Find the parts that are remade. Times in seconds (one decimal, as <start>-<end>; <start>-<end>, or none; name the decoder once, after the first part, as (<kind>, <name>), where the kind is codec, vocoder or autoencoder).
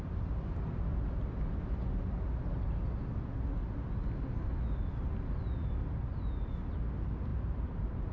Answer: none